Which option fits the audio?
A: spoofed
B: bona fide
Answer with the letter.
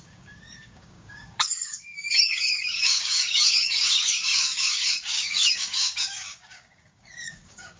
A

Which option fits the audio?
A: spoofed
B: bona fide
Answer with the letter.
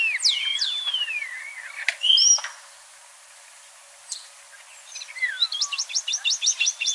B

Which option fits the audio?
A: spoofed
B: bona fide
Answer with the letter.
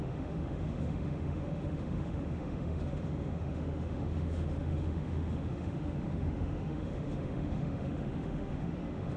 A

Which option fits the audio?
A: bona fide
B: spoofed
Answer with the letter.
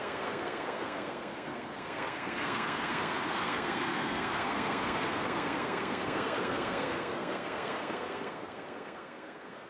B